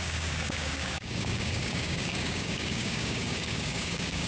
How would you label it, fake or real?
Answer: fake